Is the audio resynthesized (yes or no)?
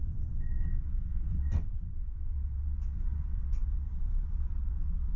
yes